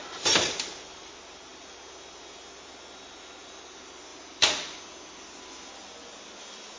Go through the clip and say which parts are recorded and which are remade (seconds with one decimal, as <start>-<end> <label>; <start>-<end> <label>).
0.0-6.8 recorded